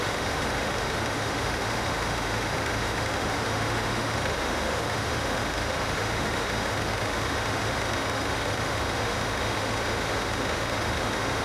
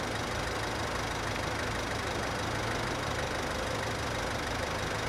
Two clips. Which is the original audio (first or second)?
second